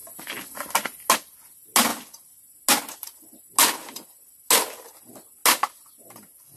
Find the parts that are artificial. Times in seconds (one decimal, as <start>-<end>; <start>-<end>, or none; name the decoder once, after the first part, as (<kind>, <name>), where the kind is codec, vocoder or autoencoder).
none